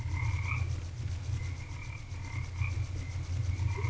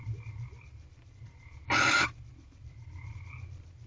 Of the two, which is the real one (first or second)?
first